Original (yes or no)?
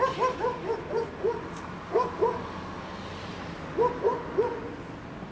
yes